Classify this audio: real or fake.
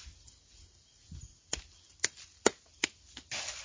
real